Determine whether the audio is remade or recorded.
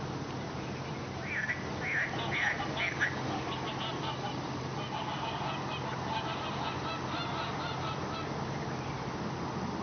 recorded